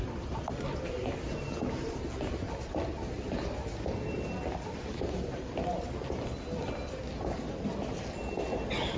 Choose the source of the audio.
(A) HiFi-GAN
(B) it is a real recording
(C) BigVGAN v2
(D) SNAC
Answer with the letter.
B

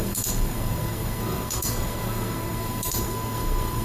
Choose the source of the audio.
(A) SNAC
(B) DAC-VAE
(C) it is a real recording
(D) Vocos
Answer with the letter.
A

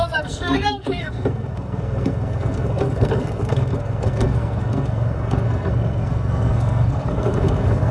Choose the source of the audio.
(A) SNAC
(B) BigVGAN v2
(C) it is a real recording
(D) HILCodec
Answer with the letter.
A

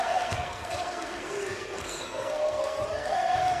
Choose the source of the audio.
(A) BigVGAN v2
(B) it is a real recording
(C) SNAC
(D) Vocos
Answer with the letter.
C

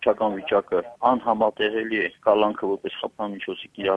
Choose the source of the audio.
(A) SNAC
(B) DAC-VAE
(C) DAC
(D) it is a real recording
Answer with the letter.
D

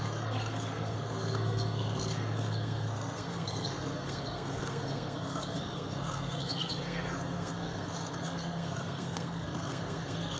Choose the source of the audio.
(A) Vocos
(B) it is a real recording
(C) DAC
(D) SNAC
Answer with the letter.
D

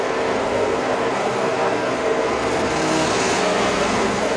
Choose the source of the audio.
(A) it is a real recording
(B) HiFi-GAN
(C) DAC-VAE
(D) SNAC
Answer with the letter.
D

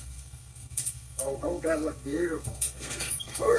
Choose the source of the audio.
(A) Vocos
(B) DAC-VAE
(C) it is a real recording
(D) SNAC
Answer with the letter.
D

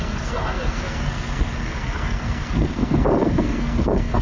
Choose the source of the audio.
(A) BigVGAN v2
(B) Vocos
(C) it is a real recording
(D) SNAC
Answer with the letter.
D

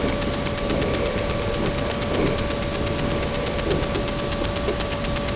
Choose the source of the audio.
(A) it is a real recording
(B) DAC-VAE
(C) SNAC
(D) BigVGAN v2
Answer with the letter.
A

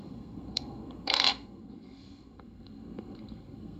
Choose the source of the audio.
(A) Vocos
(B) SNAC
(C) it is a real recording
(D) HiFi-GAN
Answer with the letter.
B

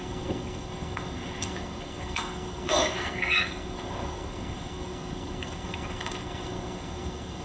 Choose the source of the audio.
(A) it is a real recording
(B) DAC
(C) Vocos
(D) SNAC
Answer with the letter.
D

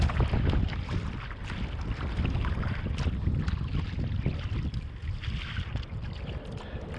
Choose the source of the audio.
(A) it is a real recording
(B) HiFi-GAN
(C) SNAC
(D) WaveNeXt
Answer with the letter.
A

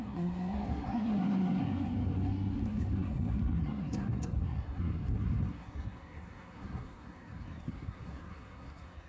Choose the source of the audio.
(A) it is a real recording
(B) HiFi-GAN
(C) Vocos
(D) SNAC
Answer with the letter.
D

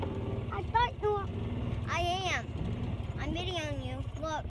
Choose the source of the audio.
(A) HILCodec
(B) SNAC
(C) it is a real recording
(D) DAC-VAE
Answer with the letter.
C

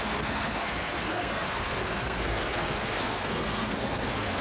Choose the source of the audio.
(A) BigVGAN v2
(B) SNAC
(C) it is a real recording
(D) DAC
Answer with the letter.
B